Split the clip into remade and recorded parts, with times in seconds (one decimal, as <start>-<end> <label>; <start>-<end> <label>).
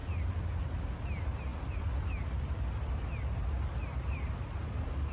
0.0-5.1 recorded